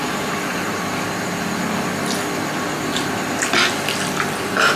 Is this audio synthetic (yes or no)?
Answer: no